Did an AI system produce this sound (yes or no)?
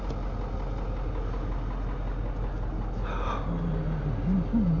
no